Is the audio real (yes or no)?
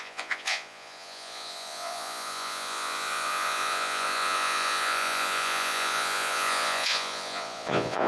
no